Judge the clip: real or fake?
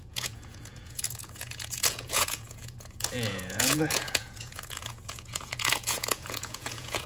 fake